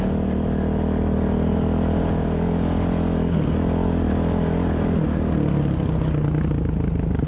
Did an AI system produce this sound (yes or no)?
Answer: no